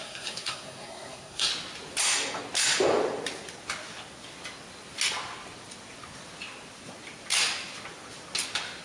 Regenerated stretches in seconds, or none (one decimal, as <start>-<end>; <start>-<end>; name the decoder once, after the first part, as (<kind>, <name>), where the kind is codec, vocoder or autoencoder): 0.0-1.5 (codec, SNAC)